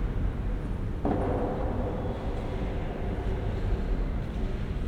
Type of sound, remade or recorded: recorded